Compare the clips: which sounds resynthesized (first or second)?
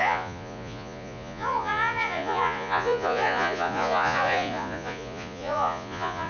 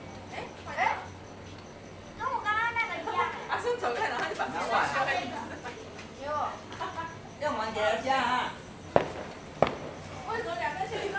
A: first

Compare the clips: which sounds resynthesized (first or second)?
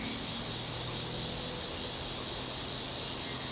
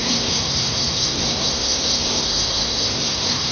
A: second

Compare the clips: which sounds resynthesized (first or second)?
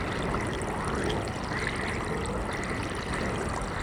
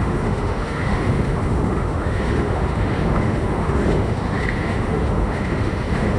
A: second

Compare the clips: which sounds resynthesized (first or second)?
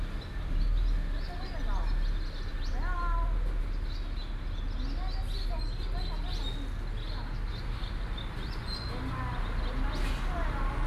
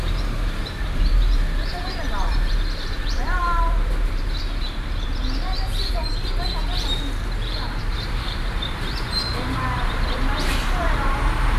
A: second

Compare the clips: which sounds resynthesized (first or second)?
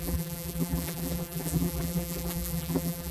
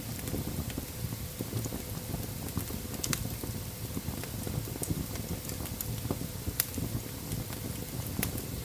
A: first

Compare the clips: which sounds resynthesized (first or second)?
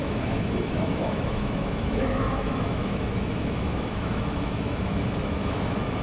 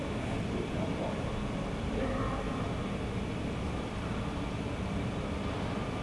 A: first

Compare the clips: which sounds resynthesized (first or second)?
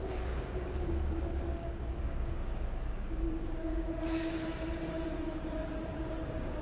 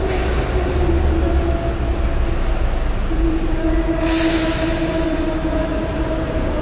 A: first